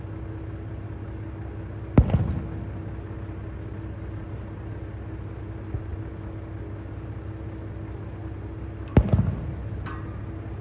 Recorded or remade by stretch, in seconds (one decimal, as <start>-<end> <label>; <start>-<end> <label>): 0.0-10.6 recorded